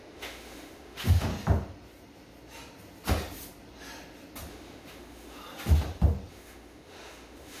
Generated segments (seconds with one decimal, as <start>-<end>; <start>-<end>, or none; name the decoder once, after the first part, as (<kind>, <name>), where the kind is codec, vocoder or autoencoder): 0.0-1.3 (autoencoder, DAC-VAE); 4.5-5.4; 6.3-7.6

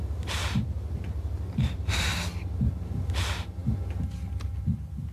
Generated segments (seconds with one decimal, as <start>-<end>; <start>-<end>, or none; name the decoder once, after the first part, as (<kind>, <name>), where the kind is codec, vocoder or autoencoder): 0.4-2.2 (vocoder, BigVGAN v2)

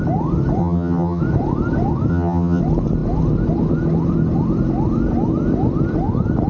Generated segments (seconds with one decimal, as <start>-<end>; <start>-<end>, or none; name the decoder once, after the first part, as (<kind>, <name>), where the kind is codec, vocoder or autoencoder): 0.6-1.2 (vocoder, HiFi-GAN); 2.1-2.6

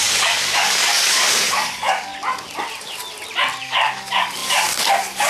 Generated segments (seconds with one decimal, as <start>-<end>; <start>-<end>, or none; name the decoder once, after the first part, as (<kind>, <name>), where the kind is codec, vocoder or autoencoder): 0.0-2.1 (codec, DAC); 3.6-5.3

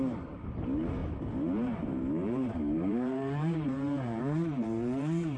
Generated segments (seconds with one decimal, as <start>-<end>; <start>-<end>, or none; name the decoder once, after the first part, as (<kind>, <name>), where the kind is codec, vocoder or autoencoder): 0.0-5.4 (vocoder, BigVGAN v2)

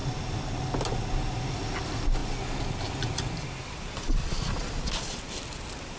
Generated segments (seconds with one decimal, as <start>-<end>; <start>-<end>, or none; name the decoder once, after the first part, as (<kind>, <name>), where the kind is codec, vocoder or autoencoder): 4.2-5.2 (vocoder, Vocos)